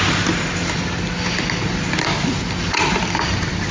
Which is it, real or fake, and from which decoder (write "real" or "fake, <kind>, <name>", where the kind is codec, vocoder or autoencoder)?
real